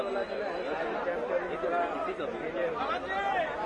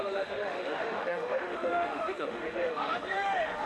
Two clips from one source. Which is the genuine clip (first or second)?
first